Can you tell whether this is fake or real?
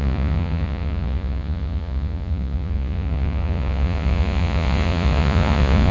fake